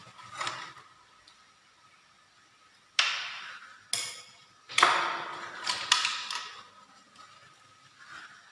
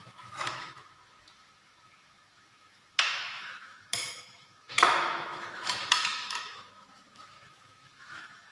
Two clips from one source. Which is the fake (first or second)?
second